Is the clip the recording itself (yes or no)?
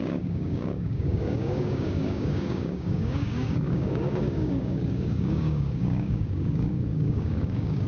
no